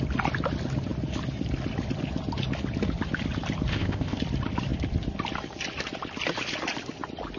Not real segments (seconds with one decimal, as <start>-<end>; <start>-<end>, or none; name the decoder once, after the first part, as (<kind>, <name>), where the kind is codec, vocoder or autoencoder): 3.7-4.2 (codec, ZipCodec)